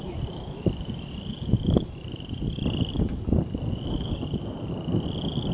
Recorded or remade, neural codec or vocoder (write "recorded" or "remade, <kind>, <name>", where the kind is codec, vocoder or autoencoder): recorded